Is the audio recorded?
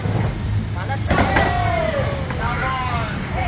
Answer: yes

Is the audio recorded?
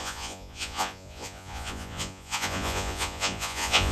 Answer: no